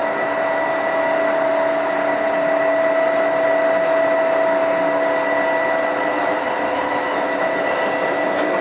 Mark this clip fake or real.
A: real